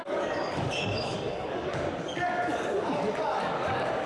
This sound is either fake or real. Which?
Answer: fake